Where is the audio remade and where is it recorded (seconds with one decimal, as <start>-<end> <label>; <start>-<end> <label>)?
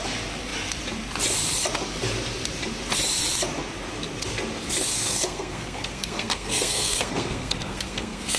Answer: 0.0-4.9 recorded; 4.9-8.4 remade